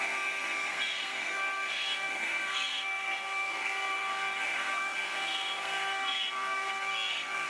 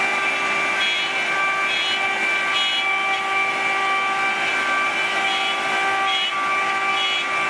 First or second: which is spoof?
first